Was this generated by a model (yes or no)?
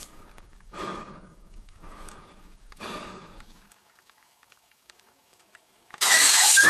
yes